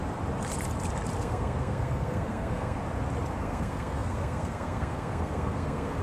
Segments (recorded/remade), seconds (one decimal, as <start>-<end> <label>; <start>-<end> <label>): 0.0-1.2 recorded; 1.2-2.8 remade; 2.8-3.4 recorded; 3.4-6.0 remade